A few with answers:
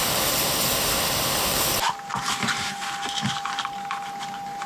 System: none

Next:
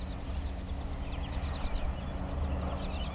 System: none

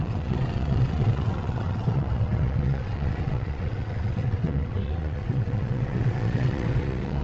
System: vocoder, WaveNeXt